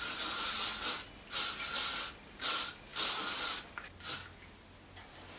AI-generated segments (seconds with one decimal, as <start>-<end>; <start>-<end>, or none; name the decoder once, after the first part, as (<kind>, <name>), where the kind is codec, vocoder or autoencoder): none